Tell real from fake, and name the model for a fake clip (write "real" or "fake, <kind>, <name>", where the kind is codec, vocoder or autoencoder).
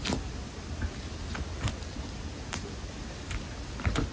real